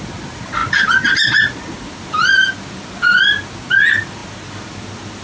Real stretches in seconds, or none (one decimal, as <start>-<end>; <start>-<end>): 0.0-5.2